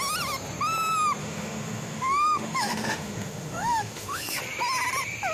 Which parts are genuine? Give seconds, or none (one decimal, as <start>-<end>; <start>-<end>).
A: 0.0-1.2; 4.4-5.3